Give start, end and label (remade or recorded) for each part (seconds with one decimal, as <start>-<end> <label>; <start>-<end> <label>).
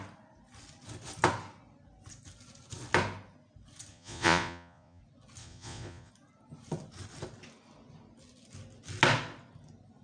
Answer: 0.0-3.9 recorded; 3.9-5.0 remade; 5.0-5.4 recorded; 5.4-6.1 remade; 6.1-10.0 recorded